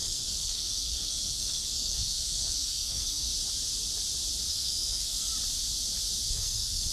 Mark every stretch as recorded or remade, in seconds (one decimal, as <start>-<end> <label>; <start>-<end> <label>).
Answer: 0.0-3.3 remade; 3.3-4.5 recorded; 4.5-5.3 remade; 5.3-6.3 recorded; 6.3-6.9 remade